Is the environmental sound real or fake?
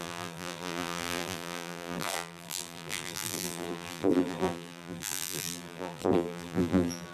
fake